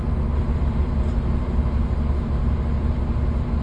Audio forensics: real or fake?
real